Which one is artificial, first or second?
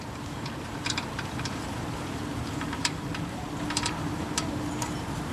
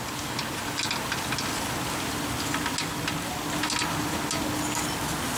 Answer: first